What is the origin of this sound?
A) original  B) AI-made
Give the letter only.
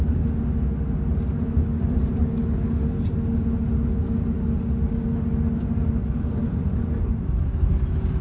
A